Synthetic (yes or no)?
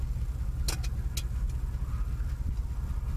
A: no